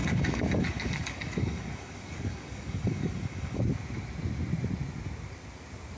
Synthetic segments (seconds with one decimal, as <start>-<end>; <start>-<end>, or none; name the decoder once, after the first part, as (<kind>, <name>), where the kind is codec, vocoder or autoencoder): 0.0-3.6 (codec, DAC)